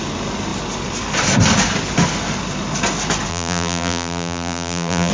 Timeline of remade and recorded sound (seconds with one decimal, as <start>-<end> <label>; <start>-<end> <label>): 0.0-3.3 recorded; 3.3-5.1 remade